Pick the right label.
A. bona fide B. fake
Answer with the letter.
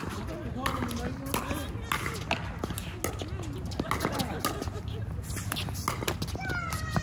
A